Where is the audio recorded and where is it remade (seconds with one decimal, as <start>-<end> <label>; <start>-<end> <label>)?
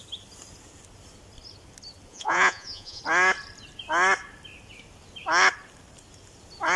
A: 0.0-2.1 recorded; 2.1-3.0 remade; 3.0-6.8 recorded